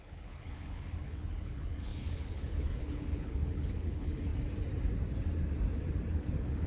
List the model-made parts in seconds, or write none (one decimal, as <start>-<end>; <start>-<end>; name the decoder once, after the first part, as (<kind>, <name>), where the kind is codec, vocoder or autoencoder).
0.0-4.3 (codec, HILCodec); 6.1-6.7